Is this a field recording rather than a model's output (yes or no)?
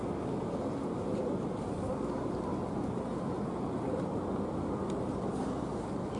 yes